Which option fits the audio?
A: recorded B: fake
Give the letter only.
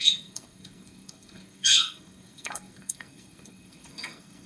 B